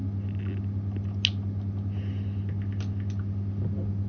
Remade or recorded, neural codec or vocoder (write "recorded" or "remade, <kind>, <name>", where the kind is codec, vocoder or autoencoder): recorded